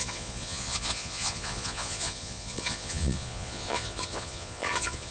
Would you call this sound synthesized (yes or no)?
yes